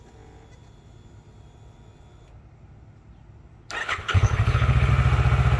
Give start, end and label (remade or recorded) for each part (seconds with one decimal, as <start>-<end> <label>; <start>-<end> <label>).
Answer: 0.0-3.8 recorded; 3.8-4.9 remade; 4.9-5.6 recorded